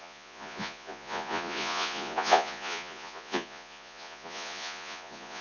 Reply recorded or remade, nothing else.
remade